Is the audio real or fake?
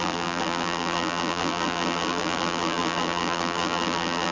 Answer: fake